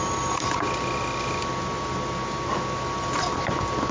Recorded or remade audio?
recorded